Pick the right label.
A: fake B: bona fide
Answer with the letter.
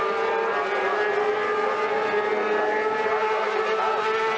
B